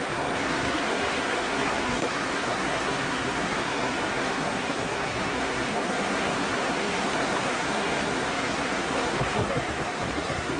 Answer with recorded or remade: remade